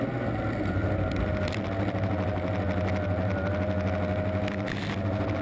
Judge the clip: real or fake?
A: real